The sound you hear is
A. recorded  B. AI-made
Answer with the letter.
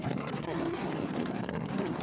B